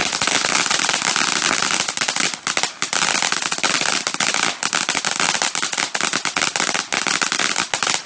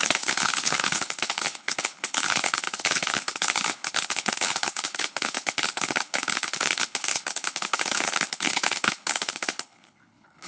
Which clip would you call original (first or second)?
first